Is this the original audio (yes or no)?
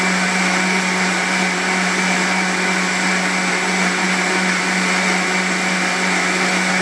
yes